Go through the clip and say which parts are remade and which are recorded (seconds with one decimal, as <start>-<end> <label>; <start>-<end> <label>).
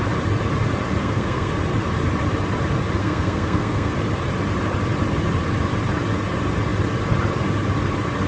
0.0-1.0 recorded; 1.0-1.5 remade; 1.5-3.0 recorded; 3.0-3.9 remade; 3.9-8.3 recorded